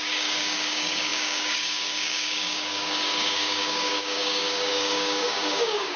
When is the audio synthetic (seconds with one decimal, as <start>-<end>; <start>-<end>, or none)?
0.0-6.0